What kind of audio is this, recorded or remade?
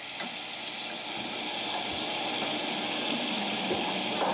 recorded